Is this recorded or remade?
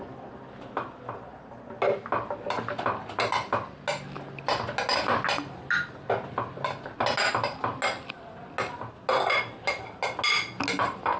recorded